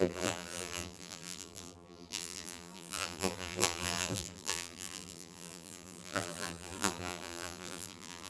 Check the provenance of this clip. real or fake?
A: fake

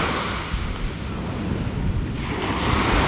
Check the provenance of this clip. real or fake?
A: real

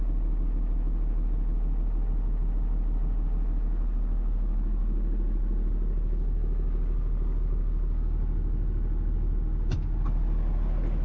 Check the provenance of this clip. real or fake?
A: real